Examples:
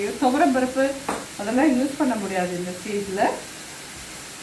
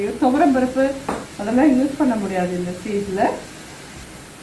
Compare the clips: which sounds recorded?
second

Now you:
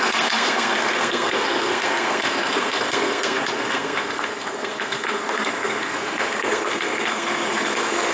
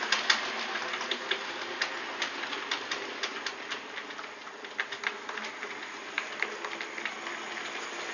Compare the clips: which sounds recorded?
second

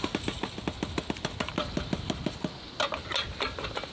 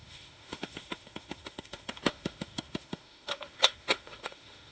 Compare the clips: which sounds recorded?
first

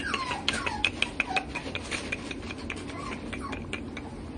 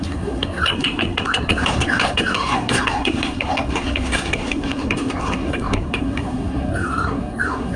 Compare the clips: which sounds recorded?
first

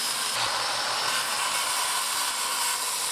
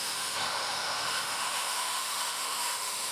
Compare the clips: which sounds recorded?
first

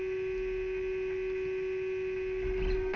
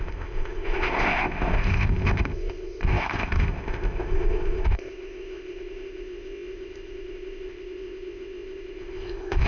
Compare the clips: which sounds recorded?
first